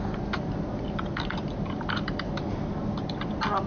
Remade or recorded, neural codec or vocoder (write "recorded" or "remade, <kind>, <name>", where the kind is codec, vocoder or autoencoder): recorded